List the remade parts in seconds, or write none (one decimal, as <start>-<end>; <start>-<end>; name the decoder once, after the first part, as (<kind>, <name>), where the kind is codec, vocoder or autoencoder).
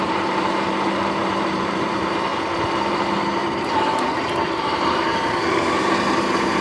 0.0-2.3 (vocoder, BigVGAN v2); 2.8-6.6